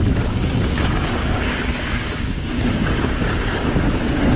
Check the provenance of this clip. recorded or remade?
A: remade